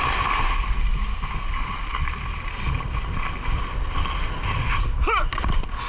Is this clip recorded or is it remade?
recorded